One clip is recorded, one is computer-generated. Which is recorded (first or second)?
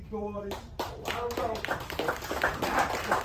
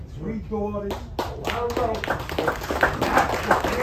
second